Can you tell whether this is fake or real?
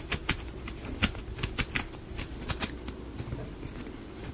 fake